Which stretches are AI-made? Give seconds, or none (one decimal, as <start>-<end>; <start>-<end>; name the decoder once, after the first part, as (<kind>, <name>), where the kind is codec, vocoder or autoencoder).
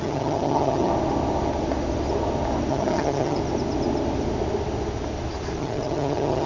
0.0-0.9 (vocoder, HiFi-GAN); 2.7-3.4; 5.6-6.5